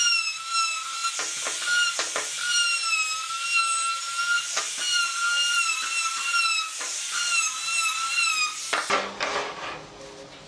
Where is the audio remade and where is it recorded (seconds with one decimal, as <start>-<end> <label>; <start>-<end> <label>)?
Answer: 0.0-10.5 recorded

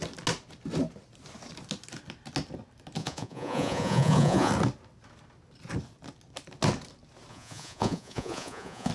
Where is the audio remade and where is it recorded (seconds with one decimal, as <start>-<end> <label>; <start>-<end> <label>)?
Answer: 0.0-3.0 recorded; 3.0-4.5 remade; 4.5-7.3 recorded; 7.3-8.9 remade

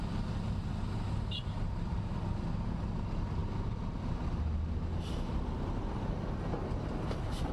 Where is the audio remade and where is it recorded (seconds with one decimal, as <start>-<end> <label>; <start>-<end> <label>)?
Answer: 0.0-7.5 recorded

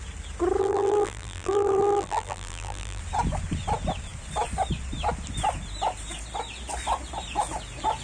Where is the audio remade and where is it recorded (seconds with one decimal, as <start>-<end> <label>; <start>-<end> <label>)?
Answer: 0.0-0.6 recorded; 0.6-3.0 remade; 3.0-8.0 recorded

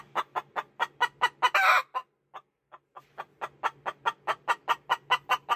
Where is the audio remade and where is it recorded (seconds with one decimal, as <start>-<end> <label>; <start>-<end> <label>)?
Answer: 0.0-5.6 recorded

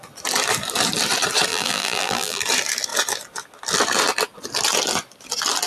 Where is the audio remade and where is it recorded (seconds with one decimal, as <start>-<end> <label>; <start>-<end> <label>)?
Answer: 0.0-1.5 recorded; 1.5-2.4 remade; 2.4-5.7 recorded

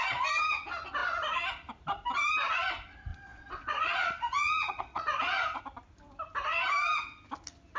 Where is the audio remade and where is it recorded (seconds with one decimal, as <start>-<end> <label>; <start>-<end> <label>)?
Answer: 0.0-3.1 recorded; 3.1-5.6 remade; 5.6-7.8 recorded

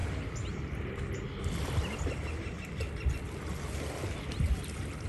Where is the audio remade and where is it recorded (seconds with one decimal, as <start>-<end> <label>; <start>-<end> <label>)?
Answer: 0.0-5.1 recorded